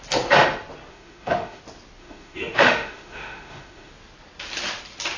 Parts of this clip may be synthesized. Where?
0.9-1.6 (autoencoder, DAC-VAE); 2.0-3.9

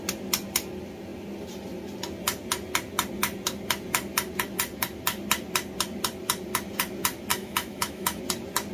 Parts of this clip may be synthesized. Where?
7.3-8.2 (autoencoder, DAC-VAE)

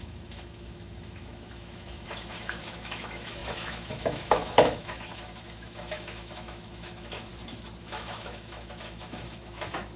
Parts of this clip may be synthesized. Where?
0.0-7.3 (autoencoder, DAC-VAE); 7.8-10.0

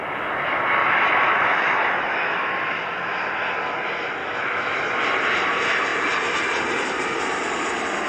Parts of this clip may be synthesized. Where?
0.8-2.5 (autoencoder, DAC-VAE); 4.2-4.8

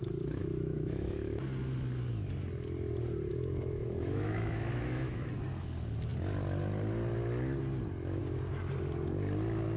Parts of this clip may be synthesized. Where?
0.4-1.4 (autoencoder, DAC-VAE); 3.3-5.3

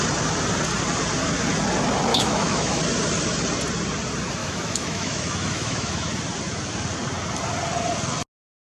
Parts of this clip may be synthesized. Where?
2.1-2.8 (autoencoder, DAC-VAE); 4.4-6.1

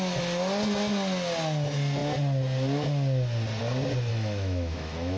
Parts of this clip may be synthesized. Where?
4.1-5.2 (autoencoder, DAC-VAE)